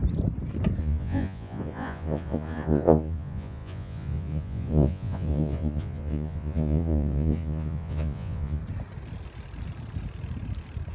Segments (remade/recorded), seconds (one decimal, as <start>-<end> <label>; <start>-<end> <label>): 0.0-0.8 recorded; 0.8-8.6 remade; 8.6-10.9 recorded